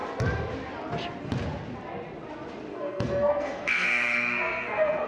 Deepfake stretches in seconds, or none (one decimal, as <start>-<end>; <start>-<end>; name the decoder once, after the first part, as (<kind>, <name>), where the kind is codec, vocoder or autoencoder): 2.7-5.1 (codec, SNAC)